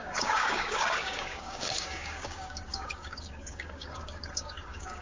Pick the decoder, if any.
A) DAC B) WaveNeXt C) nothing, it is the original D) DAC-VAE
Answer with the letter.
A